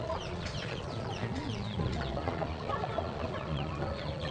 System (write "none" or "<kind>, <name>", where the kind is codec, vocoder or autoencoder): vocoder, Vocos